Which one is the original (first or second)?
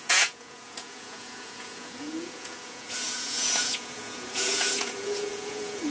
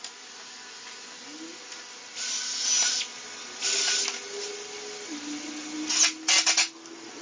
second